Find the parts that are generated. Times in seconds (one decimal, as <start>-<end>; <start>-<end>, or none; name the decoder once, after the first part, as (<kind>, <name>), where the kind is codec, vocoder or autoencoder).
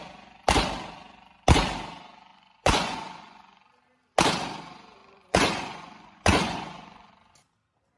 2.3-3.6 (vocoder, Vocos); 5.0-7.1